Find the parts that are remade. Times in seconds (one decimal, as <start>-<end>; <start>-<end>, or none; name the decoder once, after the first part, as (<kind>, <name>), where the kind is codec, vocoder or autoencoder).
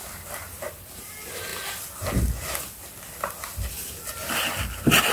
none